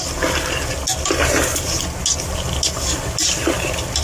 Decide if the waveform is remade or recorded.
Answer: recorded